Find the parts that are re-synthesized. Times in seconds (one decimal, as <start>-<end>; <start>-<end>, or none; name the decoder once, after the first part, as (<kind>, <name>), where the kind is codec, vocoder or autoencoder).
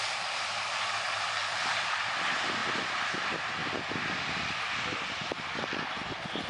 3.6-5.7 (vocoder, BigVGAN v2)